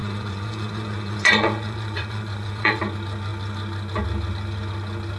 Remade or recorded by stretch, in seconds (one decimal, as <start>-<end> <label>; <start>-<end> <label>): 0.0-2.8 remade; 2.8-5.2 recorded